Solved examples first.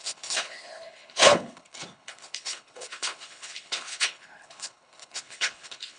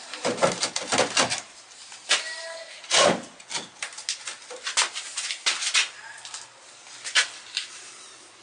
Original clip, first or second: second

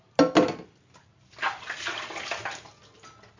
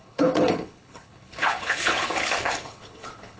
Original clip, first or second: first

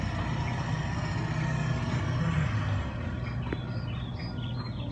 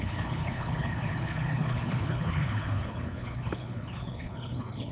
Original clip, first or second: first